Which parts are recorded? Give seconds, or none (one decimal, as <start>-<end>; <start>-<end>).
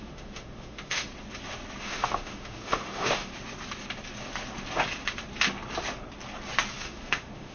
1.1-1.8; 3.3-6.8